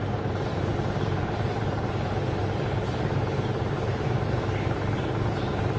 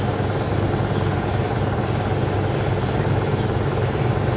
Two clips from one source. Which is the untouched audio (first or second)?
second